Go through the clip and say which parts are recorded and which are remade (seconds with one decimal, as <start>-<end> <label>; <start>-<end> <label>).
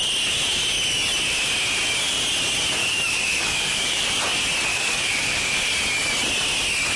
0.0-2.8 recorded; 2.8-4.1 remade; 4.1-4.7 recorded; 4.7-5.7 remade; 5.7-7.0 recorded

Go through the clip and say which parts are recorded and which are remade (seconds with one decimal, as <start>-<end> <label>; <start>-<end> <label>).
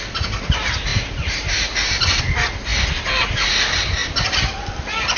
0.0-5.2 recorded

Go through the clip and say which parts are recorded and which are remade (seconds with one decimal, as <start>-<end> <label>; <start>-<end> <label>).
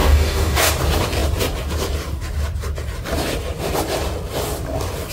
0.0-0.7 remade; 0.7-5.1 recorded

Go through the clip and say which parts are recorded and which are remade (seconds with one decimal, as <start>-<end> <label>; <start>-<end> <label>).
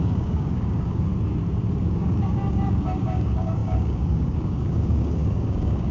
0.0-1.1 remade; 1.1-1.8 recorded; 1.8-5.9 remade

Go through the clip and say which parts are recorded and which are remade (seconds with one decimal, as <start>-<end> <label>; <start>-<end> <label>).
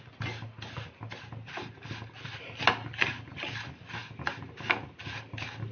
0.0-5.7 recorded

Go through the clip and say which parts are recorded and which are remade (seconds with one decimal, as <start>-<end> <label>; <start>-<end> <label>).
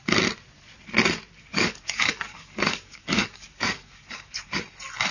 0.0-1.5 recorded; 1.5-4.6 remade; 4.6-5.1 recorded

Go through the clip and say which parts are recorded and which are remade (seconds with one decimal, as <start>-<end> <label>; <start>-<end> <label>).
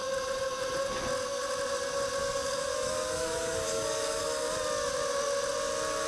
0.0-2.2 recorded; 2.2-4.2 remade; 4.2-6.1 recorded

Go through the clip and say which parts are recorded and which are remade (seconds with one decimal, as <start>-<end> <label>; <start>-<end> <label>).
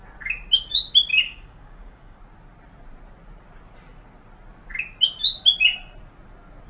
0.0-1.1 recorded; 1.1-2.2 remade; 2.2-6.7 recorded